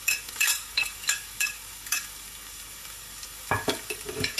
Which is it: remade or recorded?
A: remade